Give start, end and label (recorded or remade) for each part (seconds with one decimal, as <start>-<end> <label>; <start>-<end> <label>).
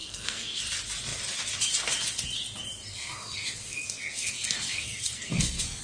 0.0-0.6 remade; 0.6-2.9 recorded; 2.9-5.8 remade